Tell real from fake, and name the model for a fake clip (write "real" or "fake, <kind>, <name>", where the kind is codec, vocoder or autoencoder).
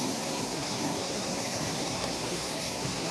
fake, codec, SNAC